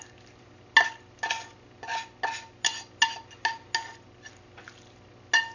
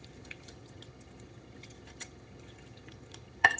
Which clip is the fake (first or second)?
second